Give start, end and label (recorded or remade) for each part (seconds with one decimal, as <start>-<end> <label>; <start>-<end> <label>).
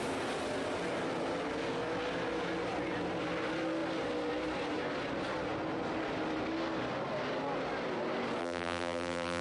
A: 0.0-8.4 recorded; 8.4-9.4 remade